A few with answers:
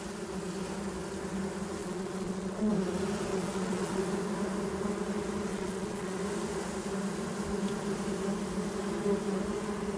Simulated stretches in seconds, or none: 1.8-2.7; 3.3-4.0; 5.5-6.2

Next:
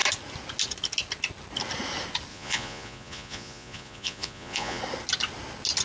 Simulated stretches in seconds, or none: 2.3-4.8

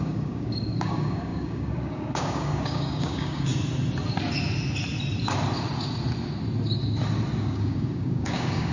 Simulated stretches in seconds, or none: 0.0-3.5; 7.4-8.7

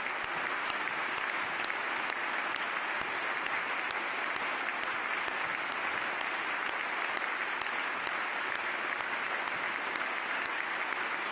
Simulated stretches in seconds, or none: none

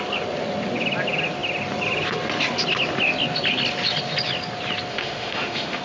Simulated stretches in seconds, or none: 4.9-5.8

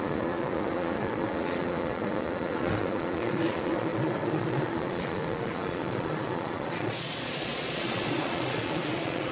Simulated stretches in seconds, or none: 0.0-9.3

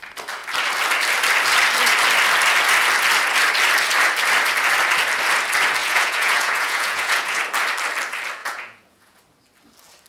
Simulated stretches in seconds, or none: 5.8-7.4; 8.4-9.2